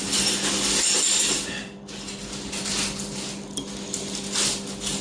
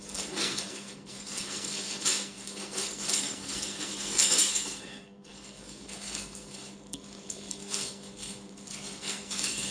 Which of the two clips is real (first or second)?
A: first